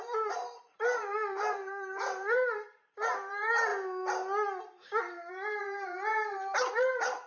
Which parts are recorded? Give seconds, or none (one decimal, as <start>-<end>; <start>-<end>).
3.7-5.0